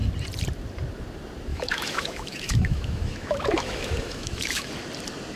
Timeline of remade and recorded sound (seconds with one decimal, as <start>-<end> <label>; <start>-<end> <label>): 0.0-1.5 recorded; 1.5-4.7 remade; 4.7-5.4 recorded